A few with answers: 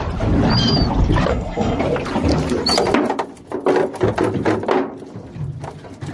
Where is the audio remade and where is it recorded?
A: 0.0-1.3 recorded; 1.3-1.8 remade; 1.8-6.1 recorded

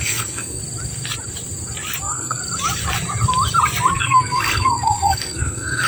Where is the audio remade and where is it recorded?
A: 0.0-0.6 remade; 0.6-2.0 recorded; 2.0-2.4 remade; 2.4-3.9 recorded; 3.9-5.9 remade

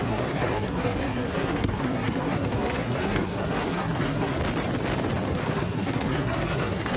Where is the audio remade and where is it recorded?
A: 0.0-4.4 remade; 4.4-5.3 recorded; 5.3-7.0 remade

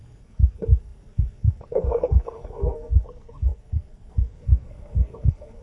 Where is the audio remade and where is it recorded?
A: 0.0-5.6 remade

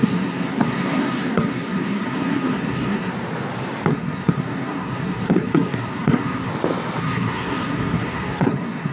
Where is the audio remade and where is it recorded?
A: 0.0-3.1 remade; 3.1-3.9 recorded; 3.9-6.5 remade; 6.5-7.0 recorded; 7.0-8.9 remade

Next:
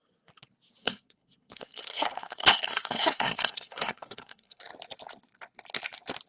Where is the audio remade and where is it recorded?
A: 0.0-0.8 recorded; 0.8-4.6 remade; 4.6-6.3 recorded